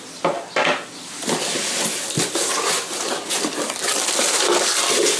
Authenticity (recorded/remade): recorded